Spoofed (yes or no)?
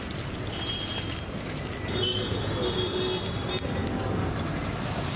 no